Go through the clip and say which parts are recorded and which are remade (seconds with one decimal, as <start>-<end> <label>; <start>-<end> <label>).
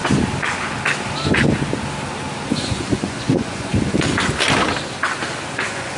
0.0-2.5 recorded; 2.5-3.7 remade; 3.7-5.6 recorded; 5.6-6.0 remade